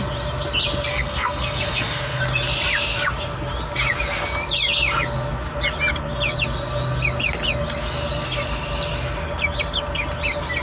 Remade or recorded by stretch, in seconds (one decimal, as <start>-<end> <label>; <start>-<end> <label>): 0.0-0.9 recorded; 0.9-2.2 remade; 2.2-10.6 recorded